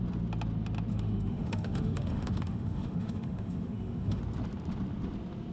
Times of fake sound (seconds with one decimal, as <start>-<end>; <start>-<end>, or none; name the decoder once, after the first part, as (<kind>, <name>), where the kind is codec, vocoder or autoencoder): 0.9-4.2 (autoencoder, DAC-VAE)